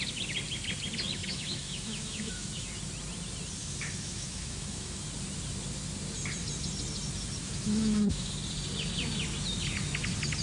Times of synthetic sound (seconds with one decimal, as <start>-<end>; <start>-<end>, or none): 1.2-2.5; 3.6-5.0; 7.4-8.3